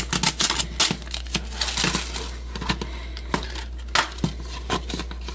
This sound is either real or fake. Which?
real